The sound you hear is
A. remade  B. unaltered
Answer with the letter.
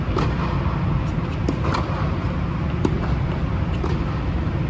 B